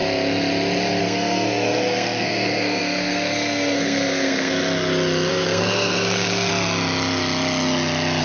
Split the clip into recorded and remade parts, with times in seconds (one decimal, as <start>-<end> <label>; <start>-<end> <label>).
0.0-1.0 recorded; 1.0-4.6 remade; 4.6-5.3 recorded; 5.3-6.5 remade; 6.5-8.2 recorded